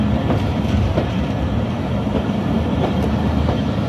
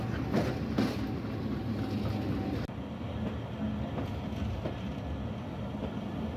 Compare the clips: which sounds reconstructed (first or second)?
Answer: first